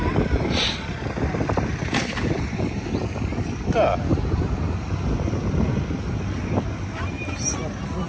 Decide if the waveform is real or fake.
real